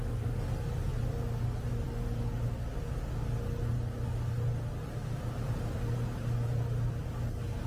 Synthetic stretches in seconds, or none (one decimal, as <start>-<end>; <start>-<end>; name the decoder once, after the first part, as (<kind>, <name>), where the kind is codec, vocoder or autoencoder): none